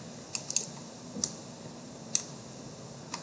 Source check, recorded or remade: recorded